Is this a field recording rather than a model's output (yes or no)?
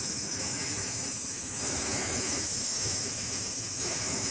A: no